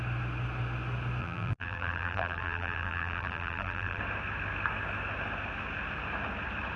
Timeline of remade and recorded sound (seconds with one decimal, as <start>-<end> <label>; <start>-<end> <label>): 0.0-1.2 recorded; 1.2-4.0 remade; 4.0-6.8 recorded